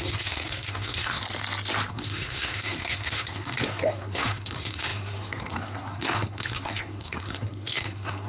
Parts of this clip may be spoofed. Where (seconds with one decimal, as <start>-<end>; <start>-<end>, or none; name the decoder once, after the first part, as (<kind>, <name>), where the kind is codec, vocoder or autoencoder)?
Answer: 0.0-1.2 (codec, SNAC); 1.9-8.3